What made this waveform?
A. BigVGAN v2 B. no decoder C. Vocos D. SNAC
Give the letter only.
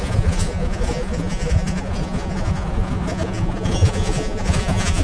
C